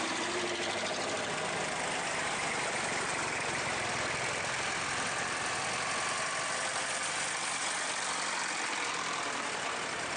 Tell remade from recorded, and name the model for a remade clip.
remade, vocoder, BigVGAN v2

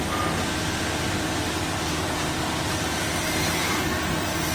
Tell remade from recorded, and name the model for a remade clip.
recorded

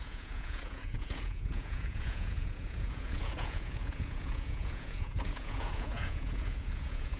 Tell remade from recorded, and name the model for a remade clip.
remade, vocoder, Vocos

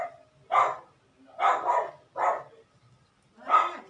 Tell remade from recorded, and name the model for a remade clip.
recorded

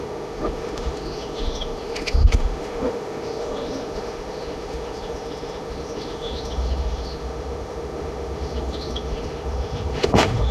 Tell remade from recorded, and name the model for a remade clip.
remade, autoencoder, DAC-VAE